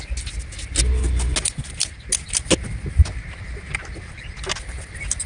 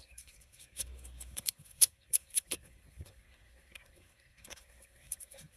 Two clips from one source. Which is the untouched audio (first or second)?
first